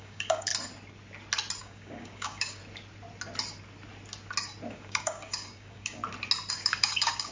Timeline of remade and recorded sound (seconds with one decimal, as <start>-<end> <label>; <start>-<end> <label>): 0.0-0.5 remade; 0.5-1.6 recorded; 1.6-2.6 remade; 2.6-4.7 recorded; 4.7-6.0 remade; 6.0-6.5 recorded; 6.5-7.3 remade